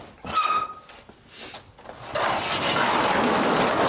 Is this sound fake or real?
real